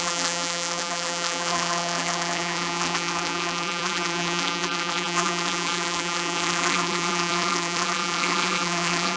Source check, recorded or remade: remade